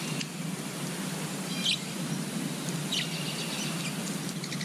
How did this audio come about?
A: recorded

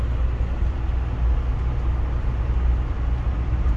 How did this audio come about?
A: recorded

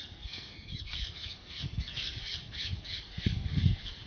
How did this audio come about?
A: remade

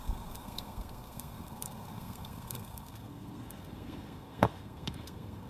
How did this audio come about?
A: remade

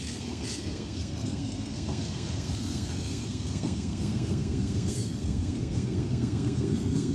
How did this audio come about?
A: remade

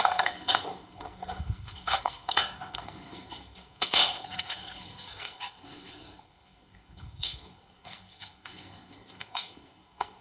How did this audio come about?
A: remade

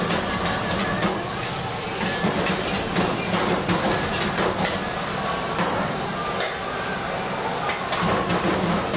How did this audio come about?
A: recorded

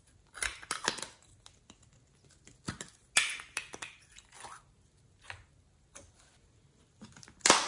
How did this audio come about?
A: recorded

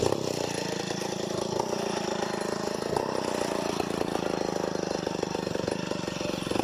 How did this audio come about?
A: recorded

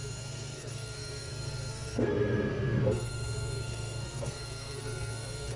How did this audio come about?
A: remade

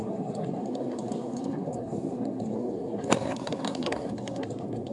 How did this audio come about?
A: remade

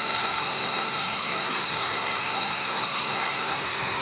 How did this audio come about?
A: remade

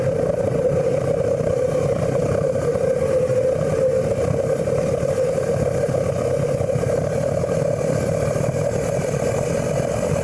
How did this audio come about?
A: recorded